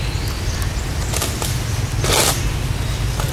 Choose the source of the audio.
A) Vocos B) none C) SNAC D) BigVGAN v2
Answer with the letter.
B